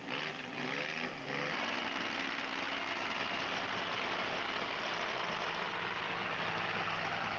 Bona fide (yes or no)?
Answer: yes